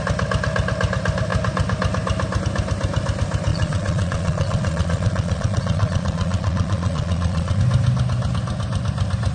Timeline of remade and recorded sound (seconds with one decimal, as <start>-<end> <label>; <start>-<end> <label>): 0.0-3.5 recorded; 3.5-7.6 remade; 7.6-9.3 recorded